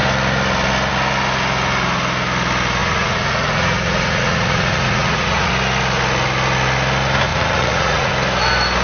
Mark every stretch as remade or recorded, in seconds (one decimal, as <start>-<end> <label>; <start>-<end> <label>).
0.0-2.8 recorded; 2.8-5.5 remade; 5.5-7.3 recorded; 7.3-8.1 remade; 8.1-8.8 recorded